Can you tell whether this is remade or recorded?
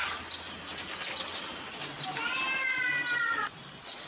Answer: recorded